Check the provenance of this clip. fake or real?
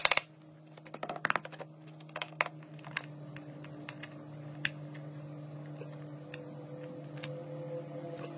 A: real